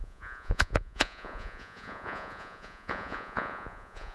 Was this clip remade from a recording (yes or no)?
yes